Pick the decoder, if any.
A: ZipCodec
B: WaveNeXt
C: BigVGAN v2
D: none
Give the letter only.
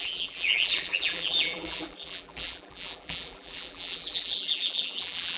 C